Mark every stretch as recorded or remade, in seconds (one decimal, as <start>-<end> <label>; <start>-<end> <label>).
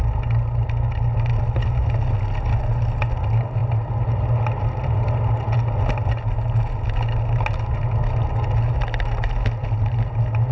0.0-10.5 recorded